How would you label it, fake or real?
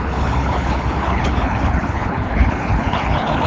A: fake